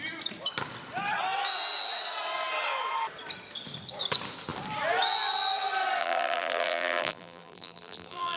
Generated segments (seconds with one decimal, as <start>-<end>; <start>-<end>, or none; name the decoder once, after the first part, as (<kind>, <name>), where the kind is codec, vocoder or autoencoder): 6.0-8.4 (vocoder, BigVGAN v2)